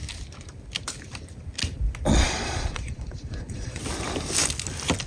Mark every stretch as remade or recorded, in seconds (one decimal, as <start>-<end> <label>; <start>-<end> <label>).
0.0-2.1 recorded; 2.1-3.8 remade; 3.8-5.1 recorded